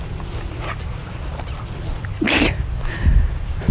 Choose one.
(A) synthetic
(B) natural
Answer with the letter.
B